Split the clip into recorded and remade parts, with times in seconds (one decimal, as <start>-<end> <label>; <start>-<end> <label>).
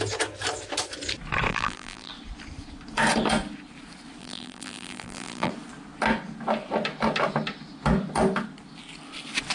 0.0-1.5 recorded; 1.5-2.1 remade; 2.1-4.2 recorded; 4.2-5.5 remade; 5.5-9.5 recorded